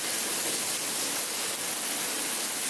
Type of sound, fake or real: real